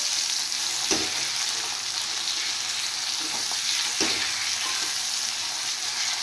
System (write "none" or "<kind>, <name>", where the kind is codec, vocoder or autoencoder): none